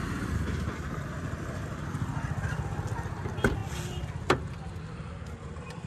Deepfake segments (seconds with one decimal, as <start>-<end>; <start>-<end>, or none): none